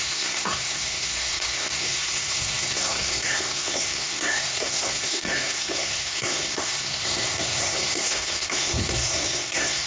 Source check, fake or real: fake